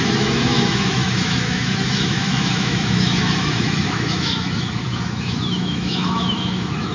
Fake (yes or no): yes